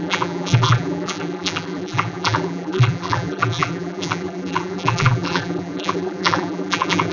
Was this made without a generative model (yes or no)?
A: no